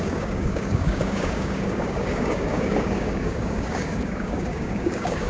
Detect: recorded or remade remade